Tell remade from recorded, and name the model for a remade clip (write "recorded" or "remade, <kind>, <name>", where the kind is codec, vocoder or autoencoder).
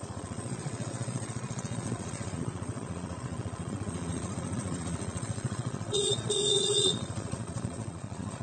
remade, vocoder, Vocos